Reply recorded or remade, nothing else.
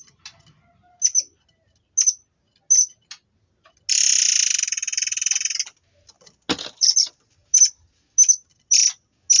recorded